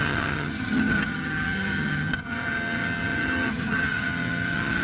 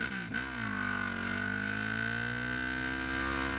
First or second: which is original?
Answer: second